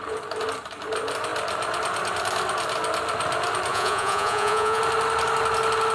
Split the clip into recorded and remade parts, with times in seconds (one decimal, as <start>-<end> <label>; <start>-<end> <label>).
0.0-3.7 recorded; 3.7-4.8 remade; 4.8-5.9 recorded